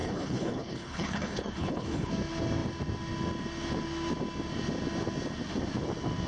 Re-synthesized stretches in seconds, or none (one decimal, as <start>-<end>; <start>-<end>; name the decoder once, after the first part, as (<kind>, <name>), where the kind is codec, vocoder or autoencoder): 0.0-2.1 (codec, HILCodec)